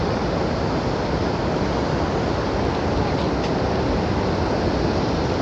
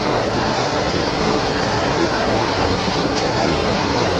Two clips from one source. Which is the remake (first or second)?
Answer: second